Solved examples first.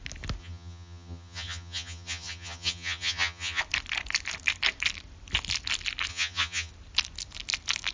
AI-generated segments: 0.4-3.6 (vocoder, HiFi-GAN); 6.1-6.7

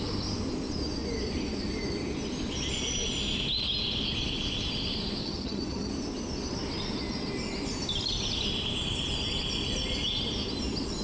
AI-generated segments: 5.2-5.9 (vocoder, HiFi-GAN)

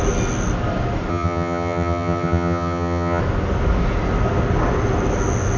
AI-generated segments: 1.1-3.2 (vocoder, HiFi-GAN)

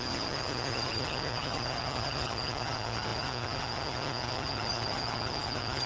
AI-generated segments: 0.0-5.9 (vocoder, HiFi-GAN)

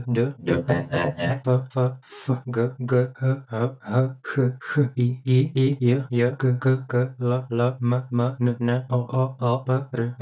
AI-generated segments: 0.4-1.3 (vocoder, HiFi-GAN)

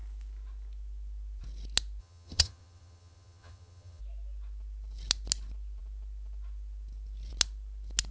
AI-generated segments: 2.0-4.0 (vocoder, HiFi-GAN)